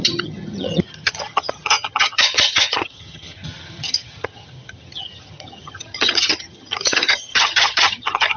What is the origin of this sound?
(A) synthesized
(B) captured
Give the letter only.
A